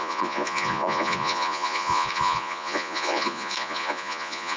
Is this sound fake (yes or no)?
yes